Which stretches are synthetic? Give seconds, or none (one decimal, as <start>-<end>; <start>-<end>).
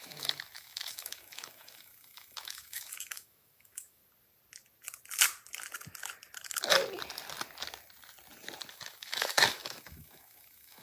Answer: 0.0-4.0; 8.7-10.8